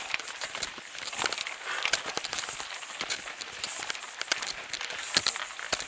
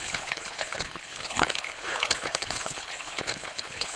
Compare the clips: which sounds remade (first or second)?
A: second